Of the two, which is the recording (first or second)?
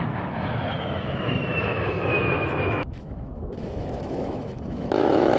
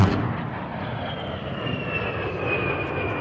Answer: second